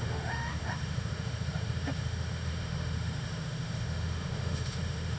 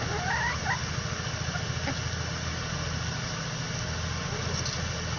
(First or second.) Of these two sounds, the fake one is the first